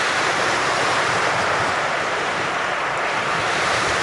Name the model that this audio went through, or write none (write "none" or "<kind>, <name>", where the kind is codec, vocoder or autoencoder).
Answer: vocoder, BigVGAN v2